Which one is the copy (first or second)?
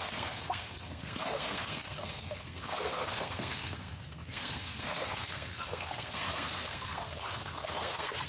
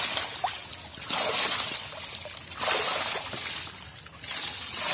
first